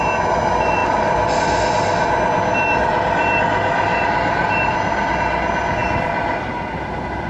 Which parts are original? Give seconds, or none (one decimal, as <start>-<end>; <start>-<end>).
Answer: 0.0-0.8; 1.4-3.9; 5.0-5.8; 6.5-7.3